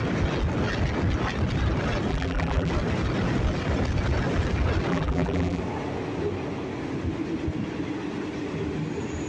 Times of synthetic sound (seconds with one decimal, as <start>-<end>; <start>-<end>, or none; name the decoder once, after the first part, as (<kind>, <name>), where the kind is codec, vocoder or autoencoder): 2.1-2.7 (vocoder, BigVGAN v2); 4.9-5.6